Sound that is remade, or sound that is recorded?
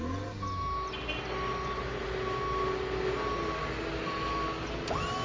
recorded